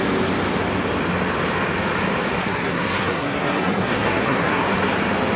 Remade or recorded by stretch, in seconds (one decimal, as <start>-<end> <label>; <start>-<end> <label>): 0.0-2.4 recorded; 2.4-4.6 remade; 4.6-5.4 recorded